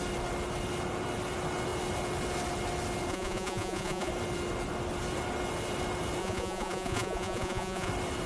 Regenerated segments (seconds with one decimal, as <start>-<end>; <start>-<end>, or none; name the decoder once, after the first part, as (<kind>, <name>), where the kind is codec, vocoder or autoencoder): 3.1-4.1 (vocoder, Vocos); 6.2-7.9